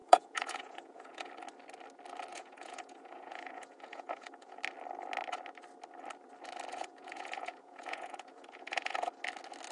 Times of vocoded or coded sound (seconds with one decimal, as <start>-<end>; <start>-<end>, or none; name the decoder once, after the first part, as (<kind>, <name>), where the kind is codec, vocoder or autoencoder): 0.0-1.3 (vocoder, Vocos); 2.3-4.6; 6.7-9.1